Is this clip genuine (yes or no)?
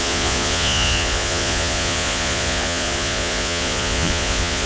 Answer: no